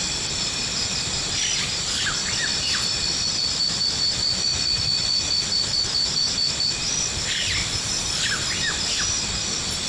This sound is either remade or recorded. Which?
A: recorded